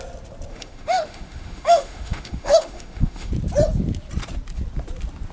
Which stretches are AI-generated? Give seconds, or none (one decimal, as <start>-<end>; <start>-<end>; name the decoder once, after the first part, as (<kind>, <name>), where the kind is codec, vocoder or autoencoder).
0.5-3.3 (autoencoder, DAC-VAE)